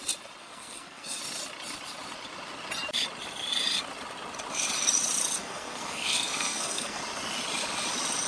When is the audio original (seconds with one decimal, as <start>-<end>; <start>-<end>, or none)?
0.0-0.4; 1.2-5.4; 7.0-8.3